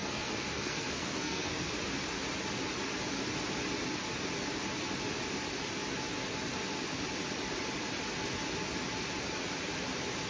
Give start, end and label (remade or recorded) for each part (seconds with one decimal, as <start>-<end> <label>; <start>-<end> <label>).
0.0-1.7 remade; 1.7-10.3 recorded